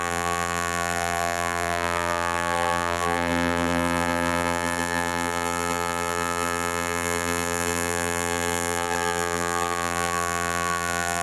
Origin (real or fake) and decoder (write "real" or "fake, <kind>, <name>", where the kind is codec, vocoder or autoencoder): fake, vocoder, BigVGAN v2